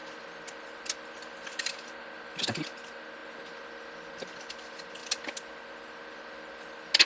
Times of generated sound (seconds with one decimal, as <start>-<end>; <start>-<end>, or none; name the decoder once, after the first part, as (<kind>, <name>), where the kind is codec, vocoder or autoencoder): none